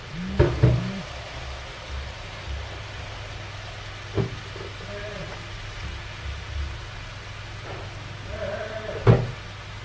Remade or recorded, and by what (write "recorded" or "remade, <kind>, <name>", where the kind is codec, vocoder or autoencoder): recorded